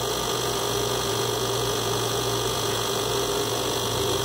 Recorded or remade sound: remade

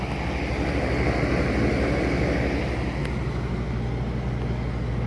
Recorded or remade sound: recorded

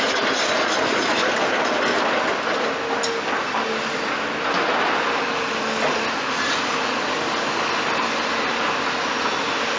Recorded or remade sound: recorded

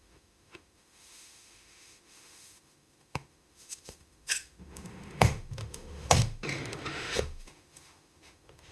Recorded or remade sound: remade